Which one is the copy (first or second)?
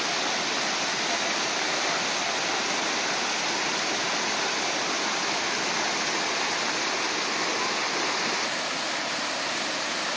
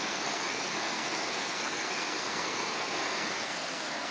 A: second